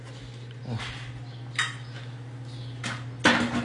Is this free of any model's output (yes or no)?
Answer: yes